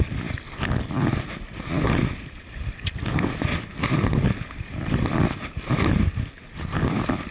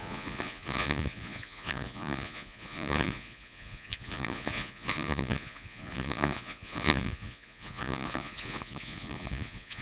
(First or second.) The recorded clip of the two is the first